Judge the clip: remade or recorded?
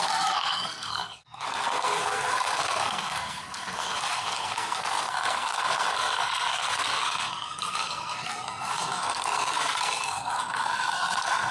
remade